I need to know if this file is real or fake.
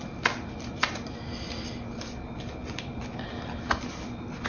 real